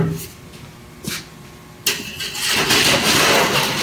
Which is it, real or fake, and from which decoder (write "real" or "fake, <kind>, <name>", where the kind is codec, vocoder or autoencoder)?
real